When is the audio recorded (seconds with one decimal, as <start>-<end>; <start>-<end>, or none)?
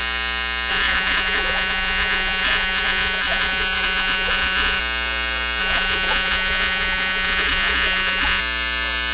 0.0-0.7; 4.8-5.6; 8.4-9.1